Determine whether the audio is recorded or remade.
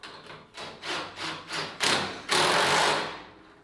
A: recorded